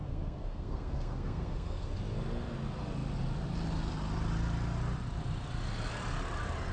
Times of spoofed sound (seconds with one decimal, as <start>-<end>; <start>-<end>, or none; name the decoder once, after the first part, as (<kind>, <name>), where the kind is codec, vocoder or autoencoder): 0.0-1.9 (codec, SNAC)